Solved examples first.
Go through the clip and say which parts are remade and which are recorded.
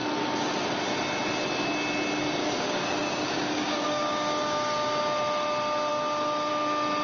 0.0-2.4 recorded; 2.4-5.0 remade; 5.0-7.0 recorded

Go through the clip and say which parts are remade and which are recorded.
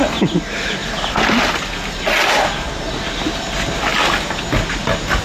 0.0-5.2 recorded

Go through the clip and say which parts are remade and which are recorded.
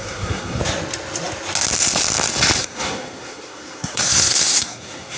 0.0-0.6 remade; 0.6-2.6 recorded; 2.6-5.2 remade